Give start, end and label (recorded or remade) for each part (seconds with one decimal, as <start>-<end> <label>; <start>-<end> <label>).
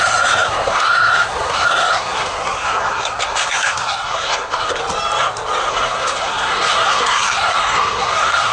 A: 0.0-4.8 remade; 4.8-5.7 recorded; 5.7-8.5 remade